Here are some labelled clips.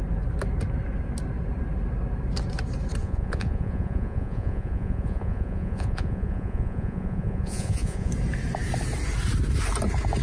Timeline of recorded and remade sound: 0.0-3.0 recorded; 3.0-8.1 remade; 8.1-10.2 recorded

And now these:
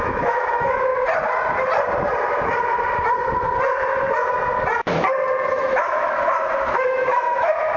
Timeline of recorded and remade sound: 0.0-0.9 remade; 0.9-5.6 recorded; 5.6-7.8 remade